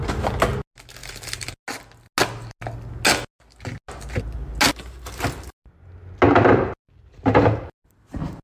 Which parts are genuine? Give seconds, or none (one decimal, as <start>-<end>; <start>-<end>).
0.0-1.0; 1.5-8.4